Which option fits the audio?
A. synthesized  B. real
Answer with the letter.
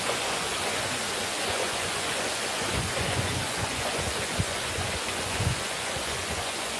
A